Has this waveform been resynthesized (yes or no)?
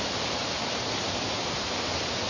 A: no